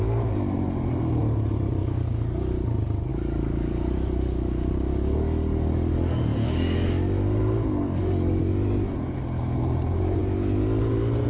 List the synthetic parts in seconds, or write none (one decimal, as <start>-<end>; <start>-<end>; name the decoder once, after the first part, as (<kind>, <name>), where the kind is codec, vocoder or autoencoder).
1.8-2.5 (codec, DAC); 3.1-8.4